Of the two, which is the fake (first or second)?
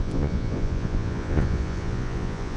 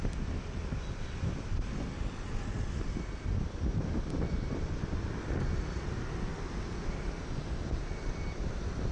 first